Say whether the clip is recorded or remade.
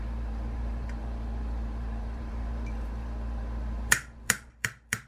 remade